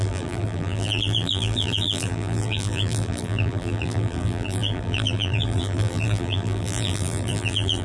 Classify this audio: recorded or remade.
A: remade